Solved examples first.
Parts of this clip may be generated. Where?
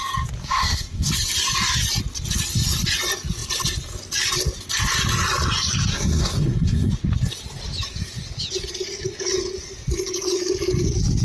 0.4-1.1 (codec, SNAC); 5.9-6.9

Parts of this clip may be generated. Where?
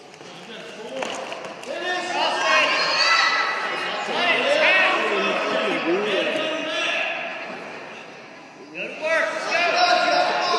none